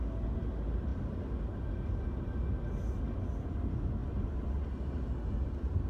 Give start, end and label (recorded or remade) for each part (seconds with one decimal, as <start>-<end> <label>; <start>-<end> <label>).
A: 0.0-4.0 recorded; 4.0-4.6 remade; 4.6-5.9 recorded